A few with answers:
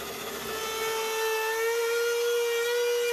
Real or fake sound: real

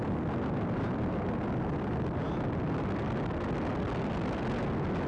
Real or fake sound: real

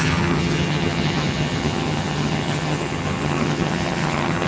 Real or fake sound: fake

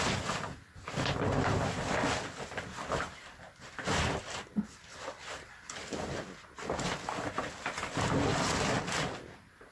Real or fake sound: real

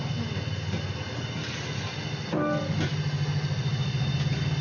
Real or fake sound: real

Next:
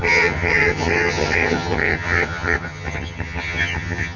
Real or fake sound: fake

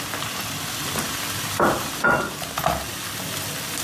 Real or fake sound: real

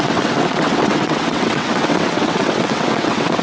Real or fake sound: fake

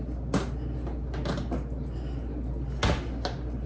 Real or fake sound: real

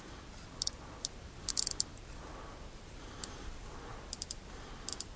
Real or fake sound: real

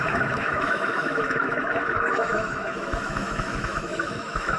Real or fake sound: fake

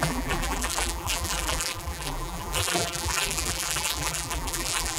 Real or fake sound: fake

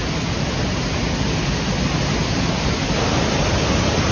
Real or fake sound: real